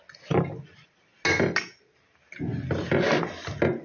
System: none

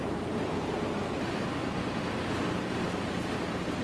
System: none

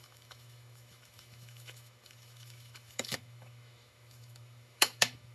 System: autoencoder, DAC-VAE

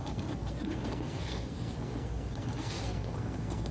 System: codec, SNAC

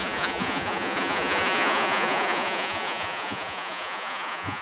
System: vocoder, Vocos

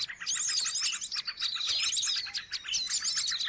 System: none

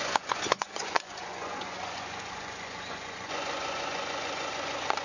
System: vocoder, Vocos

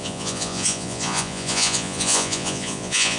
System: vocoder, Vocos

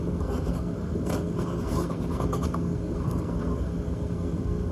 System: codec, SNAC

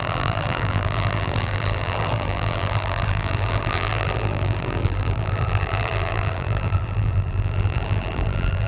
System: vocoder, BigVGAN v2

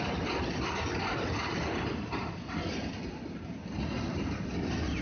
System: none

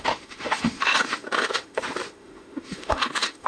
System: autoencoder, DAC-VAE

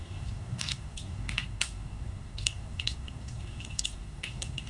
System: codec, SNAC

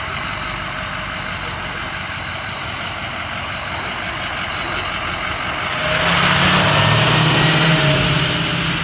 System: none